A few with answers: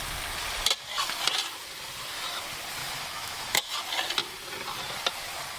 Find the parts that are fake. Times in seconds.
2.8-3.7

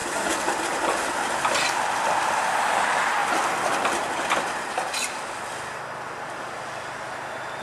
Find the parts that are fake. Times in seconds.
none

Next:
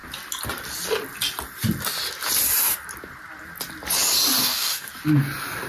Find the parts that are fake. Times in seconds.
4.4-4.9

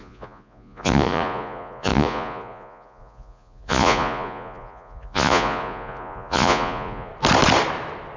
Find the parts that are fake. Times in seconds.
0.0-7.1